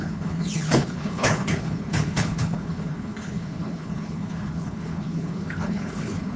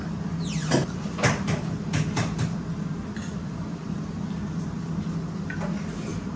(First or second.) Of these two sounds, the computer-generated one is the first